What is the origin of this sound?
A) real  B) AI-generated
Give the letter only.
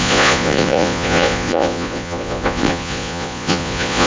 B